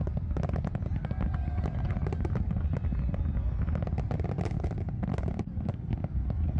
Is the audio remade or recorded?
recorded